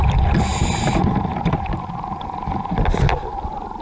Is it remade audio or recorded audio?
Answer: recorded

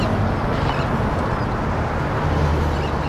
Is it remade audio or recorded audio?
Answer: recorded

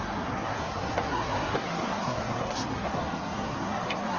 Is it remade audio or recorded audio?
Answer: remade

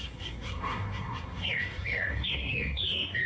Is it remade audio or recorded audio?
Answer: remade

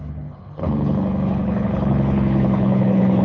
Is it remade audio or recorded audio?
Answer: remade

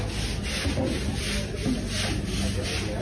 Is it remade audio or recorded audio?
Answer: recorded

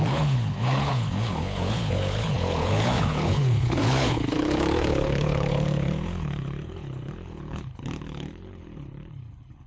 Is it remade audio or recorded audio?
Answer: remade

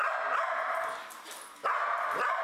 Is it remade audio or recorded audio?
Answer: recorded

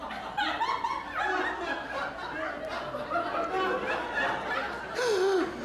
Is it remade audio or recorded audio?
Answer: recorded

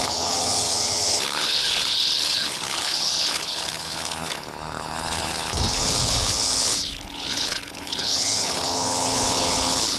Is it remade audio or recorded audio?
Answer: remade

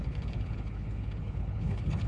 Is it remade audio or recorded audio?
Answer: remade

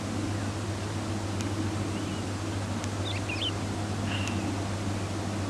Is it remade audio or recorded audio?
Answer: recorded